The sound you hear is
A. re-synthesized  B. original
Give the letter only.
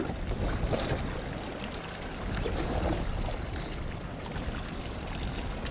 B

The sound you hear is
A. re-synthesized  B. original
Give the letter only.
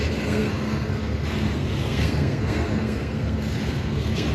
A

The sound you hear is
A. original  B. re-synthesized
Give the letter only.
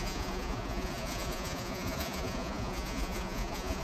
B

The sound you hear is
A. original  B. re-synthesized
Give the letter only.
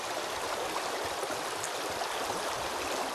B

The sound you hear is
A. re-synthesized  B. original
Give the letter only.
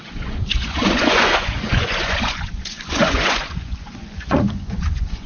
A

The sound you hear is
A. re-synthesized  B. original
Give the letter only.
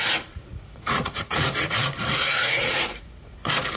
A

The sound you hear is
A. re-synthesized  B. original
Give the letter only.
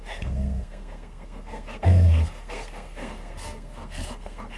A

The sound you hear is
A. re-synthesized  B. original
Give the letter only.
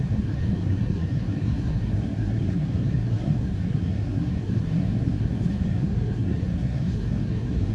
A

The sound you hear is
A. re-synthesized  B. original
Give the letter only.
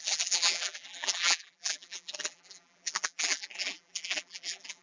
A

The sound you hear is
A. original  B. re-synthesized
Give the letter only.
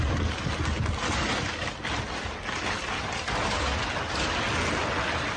A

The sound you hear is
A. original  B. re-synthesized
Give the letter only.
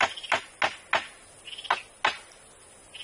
A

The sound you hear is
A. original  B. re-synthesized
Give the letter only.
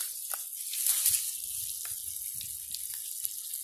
A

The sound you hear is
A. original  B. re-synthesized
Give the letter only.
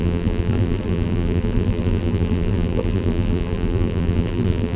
B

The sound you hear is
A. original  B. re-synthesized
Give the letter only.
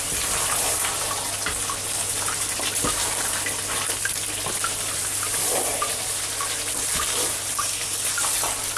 A